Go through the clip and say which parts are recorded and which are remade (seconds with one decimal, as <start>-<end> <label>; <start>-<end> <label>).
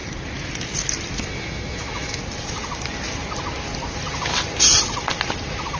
0.0-1.2 recorded; 1.2-2.2 remade; 2.2-5.8 recorded